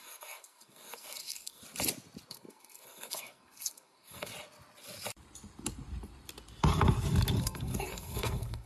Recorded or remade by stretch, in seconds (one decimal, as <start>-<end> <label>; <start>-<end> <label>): 0.0-1.6 remade; 1.6-2.3 recorded; 2.3-4.3 remade; 4.3-7.4 recorded; 7.4-8.7 remade